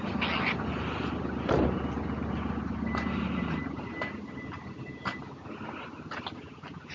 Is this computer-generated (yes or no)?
no